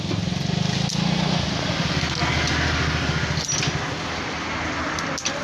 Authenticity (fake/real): real